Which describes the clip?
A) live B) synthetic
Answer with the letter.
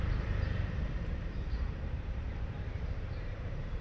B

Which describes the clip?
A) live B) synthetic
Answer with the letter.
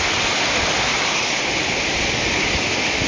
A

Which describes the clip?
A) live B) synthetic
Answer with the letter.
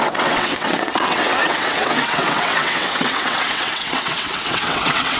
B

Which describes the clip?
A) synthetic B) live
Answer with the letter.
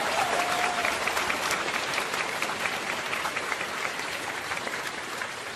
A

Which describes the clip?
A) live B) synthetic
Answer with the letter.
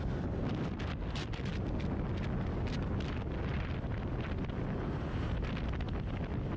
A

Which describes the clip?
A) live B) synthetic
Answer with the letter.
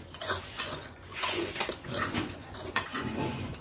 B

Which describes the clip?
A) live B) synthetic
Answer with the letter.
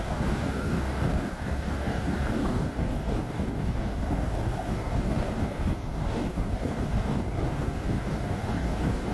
B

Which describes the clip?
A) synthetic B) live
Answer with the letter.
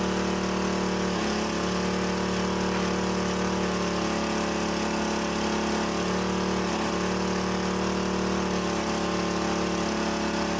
B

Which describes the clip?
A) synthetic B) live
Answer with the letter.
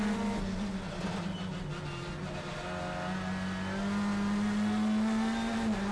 B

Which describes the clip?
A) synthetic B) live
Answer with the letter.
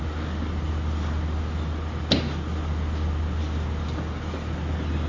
B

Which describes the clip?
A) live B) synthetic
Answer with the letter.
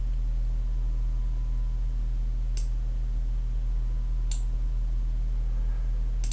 A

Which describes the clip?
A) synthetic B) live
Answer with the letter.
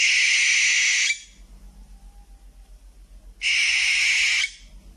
B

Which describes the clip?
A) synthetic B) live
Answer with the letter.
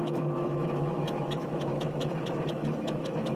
A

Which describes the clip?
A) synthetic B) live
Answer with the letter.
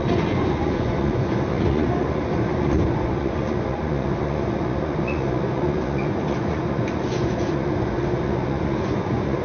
A